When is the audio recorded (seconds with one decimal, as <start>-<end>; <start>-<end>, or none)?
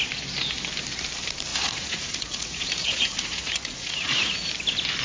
0.0-1.5; 4.5-5.0